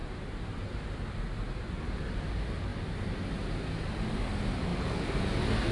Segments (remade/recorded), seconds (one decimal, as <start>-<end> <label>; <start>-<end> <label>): 0.0-1.8 remade; 1.8-5.7 recorded